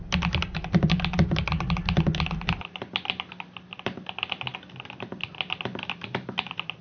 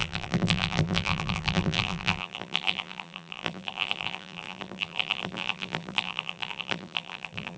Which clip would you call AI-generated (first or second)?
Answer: second